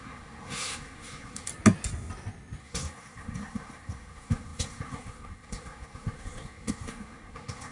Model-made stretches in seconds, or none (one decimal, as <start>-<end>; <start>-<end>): 0.0-1.5; 2.6-7.7